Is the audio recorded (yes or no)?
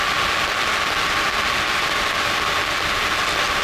yes